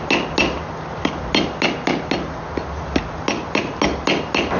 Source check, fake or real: real